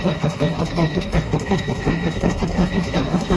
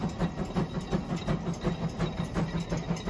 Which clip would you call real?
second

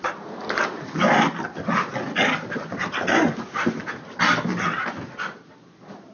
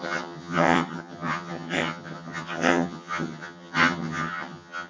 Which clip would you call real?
first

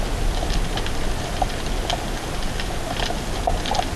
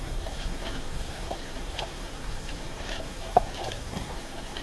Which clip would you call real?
first